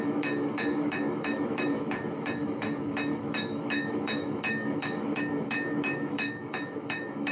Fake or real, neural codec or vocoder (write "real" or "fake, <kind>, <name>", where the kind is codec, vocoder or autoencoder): fake, autoencoder, DAC-VAE